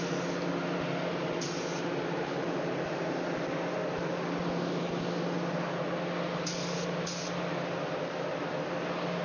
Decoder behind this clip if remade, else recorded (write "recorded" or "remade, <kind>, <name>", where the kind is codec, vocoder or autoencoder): recorded